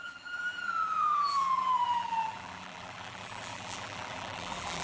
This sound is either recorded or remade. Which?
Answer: remade